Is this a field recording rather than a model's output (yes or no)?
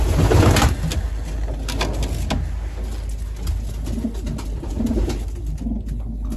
yes